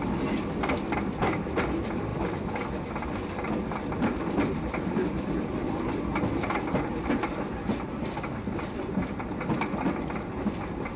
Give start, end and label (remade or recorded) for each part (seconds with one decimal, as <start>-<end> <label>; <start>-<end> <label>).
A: 0.0-2.1 recorded; 2.1-6.0 remade; 6.0-11.0 recorded

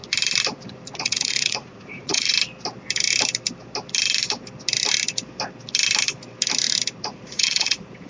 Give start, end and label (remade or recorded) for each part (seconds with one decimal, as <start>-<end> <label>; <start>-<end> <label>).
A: 0.0-0.7 recorded; 0.7-2.3 remade; 2.3-7.0 recorded; 7.0-8.1 remade

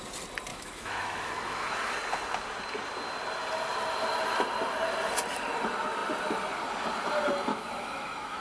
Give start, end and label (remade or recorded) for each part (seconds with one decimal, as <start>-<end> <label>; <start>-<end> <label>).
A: 0.0-0.5 recorded; 0.5-1.9 remade; 1.9-7.5 recorded; 7.5-8.4 remade

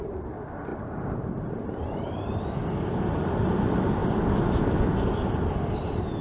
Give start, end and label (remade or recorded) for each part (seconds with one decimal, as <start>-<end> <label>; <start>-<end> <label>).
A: 0.0-0.7 recorded; 0.7-2.4 remade; 2.4-6.2 recorded

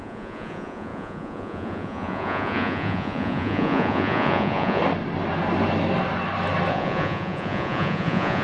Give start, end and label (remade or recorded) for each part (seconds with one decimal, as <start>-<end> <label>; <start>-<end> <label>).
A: 0.0-4.8 remade; 4.8-6.7 recorded; 6.7-8.4 remade

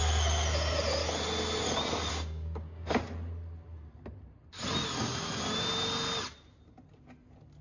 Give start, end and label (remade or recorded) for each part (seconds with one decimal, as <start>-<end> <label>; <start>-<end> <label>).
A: 0.0-2.1 recorded; 2.1-2.9 remade; 2.9-7.6 recorded